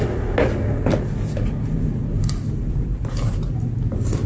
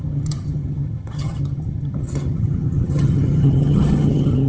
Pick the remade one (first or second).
second